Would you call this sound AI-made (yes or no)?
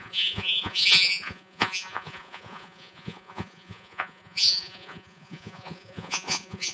yes